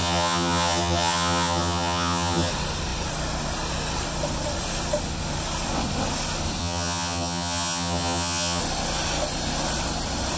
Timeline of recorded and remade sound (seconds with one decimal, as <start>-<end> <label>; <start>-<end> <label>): 0.0-2.5 remade; 2.5-6.6 recorded; 6.6-8.6 remade; 8.6-10.4 recorded